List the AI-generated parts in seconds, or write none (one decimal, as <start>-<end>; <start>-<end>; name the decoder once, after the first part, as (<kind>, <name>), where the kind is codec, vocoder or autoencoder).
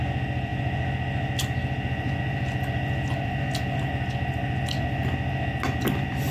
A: none